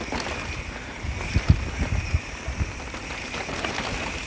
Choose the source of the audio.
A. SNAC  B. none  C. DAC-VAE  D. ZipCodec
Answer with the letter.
B